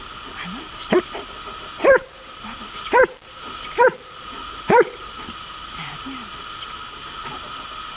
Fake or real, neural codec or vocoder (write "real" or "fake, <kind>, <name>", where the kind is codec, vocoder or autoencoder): real